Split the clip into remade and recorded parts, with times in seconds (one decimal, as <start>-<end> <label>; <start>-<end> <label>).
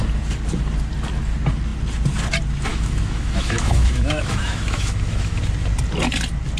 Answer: 0.0-2.7 recorded; 2.7-5.4 remade; 5.4-6.6 recorded